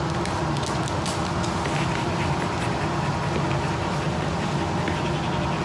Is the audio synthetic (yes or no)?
no